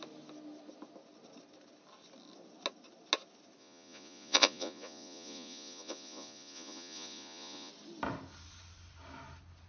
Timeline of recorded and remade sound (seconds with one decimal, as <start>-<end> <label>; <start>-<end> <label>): 0.0-3.6 recorded; 3.6-7.7 remade; 7.7-9.7 recorded